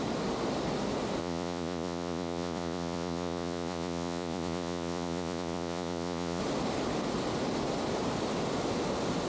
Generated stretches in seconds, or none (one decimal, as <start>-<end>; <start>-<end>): 1.2-6.4